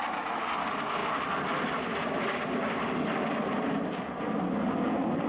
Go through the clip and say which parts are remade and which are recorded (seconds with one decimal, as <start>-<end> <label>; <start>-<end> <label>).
0.0-5.3 recorded